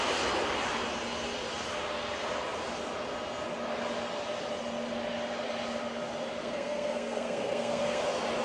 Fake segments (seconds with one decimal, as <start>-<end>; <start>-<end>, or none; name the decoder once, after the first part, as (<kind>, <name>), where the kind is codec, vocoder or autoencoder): 6.4-8.0 (codec, SNAC)